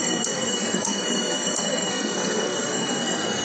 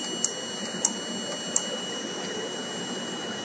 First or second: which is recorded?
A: second